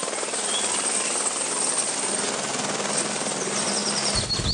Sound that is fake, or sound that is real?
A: real